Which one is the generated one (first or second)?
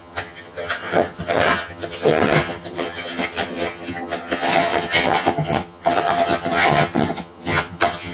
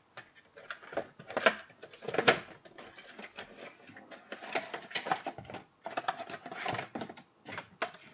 first